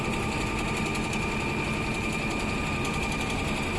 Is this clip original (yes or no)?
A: yes